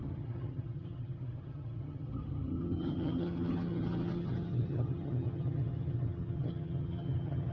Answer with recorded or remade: remade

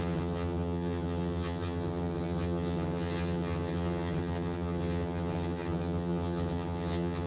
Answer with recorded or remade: remade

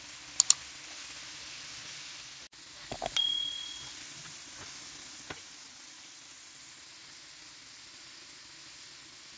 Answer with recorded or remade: recorded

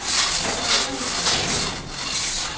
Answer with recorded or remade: recorded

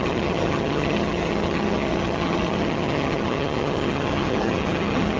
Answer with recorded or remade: remade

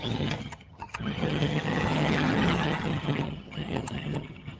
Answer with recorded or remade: remade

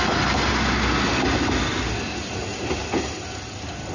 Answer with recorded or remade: recorded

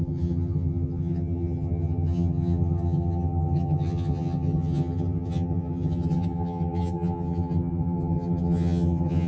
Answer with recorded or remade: remade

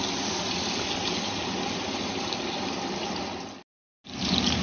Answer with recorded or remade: recorded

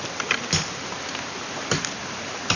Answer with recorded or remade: recorded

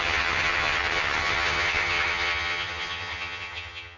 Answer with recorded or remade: remade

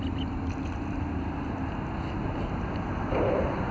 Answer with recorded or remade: recorded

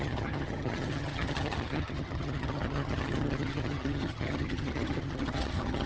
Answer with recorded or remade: remade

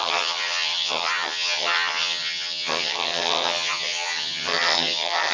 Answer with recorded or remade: remade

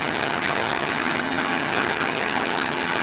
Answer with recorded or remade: remade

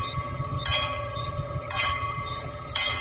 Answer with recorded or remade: remade